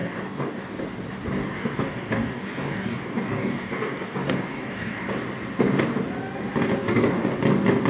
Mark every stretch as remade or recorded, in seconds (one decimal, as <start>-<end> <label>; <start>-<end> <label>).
0.0-0.8 remade; 0.8-1.4 recorded; 1.4-5.1 remade; 5.1-6.8 recorded; 6.8-7.4 remade; 7.4-7.9 recorded

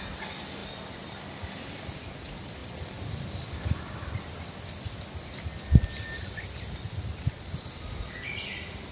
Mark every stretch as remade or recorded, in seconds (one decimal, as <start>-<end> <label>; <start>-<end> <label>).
0.0-8.9 recorded

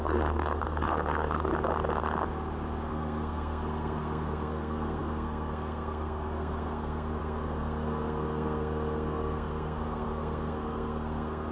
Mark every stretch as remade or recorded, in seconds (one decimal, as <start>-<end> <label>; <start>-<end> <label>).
0.0-1.5 remade; 1.5-2.9 recorded; 2.9-11.5 remade